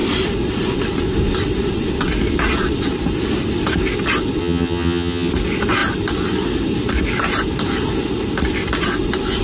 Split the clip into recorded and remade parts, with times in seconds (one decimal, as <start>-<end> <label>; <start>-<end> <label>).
0.0-4.4 recorded; 4.4-5.3 remade; 5.3-9.4 recorded